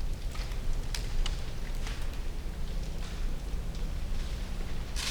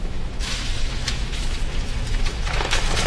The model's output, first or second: second